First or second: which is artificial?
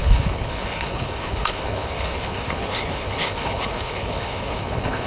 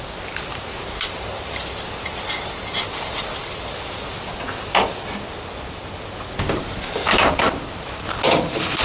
first